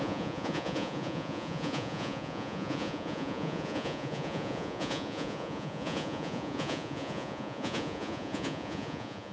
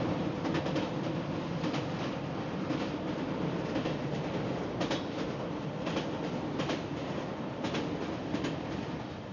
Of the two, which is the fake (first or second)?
first